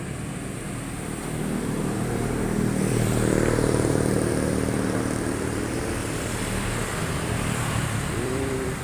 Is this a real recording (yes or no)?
no